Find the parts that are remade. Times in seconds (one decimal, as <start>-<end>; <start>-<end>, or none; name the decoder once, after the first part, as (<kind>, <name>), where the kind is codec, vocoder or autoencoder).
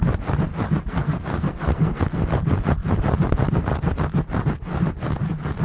0.9-2.2 (codec, SNAC)